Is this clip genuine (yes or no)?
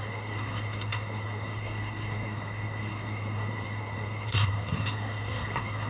no